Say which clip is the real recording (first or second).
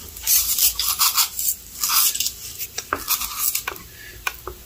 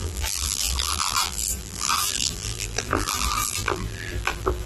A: first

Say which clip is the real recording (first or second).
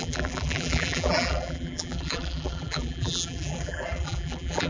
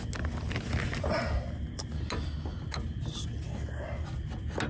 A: second